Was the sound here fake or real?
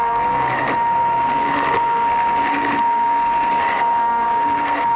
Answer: fake